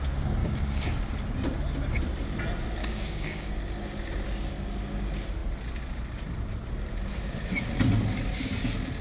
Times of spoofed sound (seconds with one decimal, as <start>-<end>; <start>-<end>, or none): 0.4-0.9; 2.8-3.5

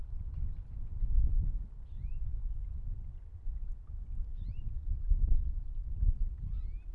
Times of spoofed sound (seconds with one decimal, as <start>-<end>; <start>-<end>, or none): 4.3-5.6

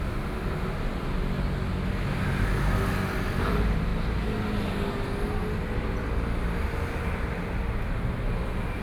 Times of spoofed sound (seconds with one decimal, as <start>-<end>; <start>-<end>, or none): none

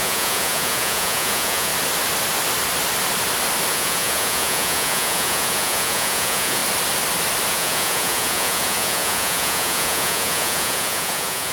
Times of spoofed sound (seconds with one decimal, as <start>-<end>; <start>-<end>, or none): 0.0-1.7; 3.7-6.6; 7.5-11.5

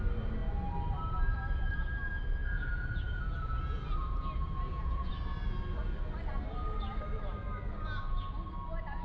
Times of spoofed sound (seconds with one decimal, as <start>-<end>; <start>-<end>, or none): 2.4-5.1

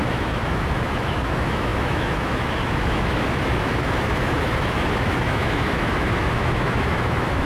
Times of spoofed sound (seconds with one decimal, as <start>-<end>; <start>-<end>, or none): 0.0-7.5

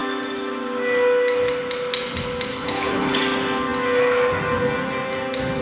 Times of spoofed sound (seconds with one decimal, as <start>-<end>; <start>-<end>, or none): 2.5-3.2